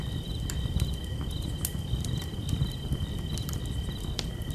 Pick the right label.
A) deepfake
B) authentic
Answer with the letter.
B